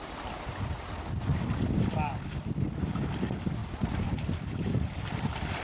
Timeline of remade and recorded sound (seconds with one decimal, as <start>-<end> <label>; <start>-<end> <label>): 0.0-3.6 recorded; 3.6-5.6 remade